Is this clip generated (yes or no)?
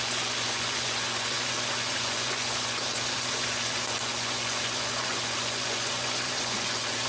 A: yes